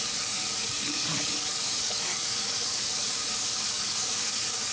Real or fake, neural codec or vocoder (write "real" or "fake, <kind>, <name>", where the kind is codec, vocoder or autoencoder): fake, codec, DAC